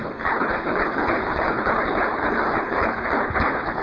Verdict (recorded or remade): remade